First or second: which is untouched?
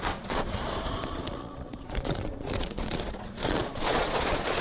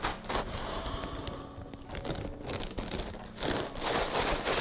second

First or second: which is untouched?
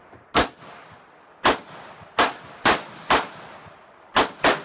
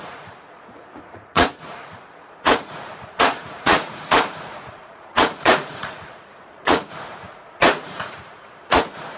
first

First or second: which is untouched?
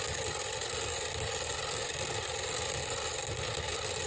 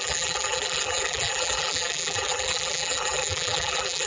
first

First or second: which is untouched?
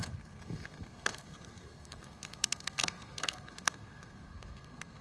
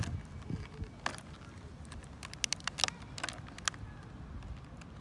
second